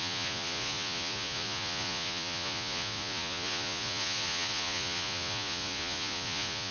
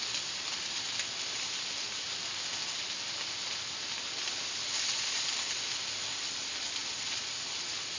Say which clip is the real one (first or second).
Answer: second